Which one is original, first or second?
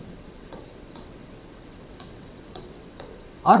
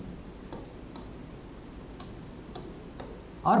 second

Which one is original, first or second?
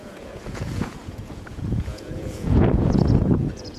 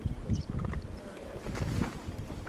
second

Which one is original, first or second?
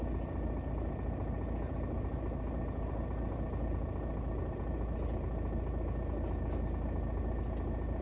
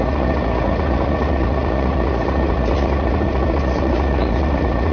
first